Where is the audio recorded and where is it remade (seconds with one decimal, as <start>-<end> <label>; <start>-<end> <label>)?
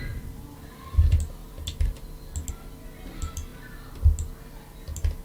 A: 0.0-5.2 recorded